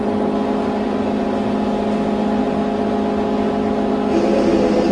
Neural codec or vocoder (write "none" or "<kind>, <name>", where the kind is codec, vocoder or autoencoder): none